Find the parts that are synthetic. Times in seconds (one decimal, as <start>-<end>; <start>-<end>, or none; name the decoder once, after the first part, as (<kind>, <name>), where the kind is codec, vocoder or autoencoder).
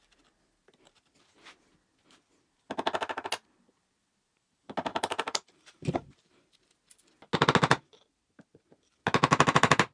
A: 4.9-6.6 (vocoder, BigVGAN v2)